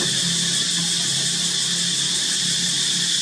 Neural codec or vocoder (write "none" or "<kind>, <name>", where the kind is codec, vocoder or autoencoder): none